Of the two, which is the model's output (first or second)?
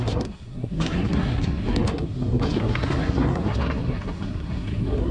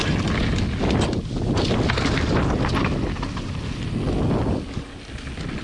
first